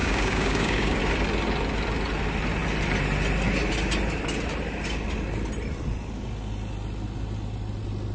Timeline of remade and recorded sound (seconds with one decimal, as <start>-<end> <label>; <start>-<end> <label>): 0.0-1.0 remade; 1.0-8.1 recorded